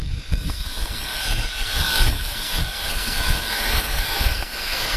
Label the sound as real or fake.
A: fake